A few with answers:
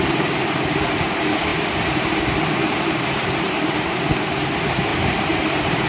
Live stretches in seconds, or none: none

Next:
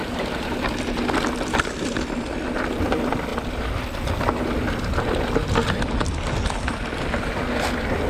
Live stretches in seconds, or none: 0.7-8.1

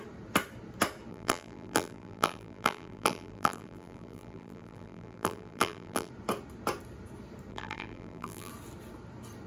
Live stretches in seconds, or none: 0.0-1.1; 6.1-7.5; 8.5-9.5